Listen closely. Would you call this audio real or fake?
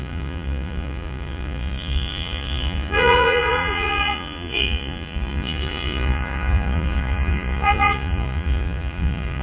fake